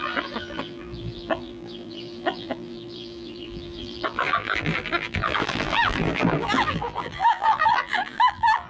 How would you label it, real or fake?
fake